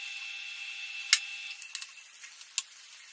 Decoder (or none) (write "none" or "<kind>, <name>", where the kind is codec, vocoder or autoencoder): none